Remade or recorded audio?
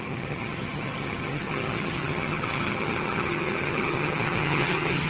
remade